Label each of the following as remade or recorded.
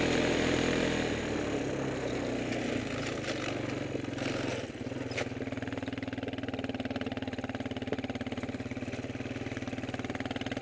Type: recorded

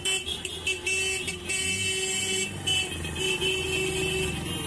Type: recorded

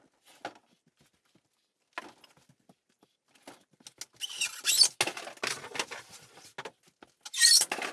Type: recorded